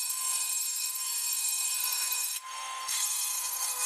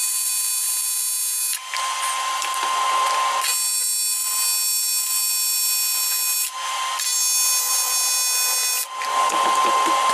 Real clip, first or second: second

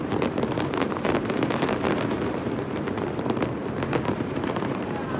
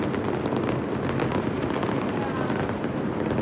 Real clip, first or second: second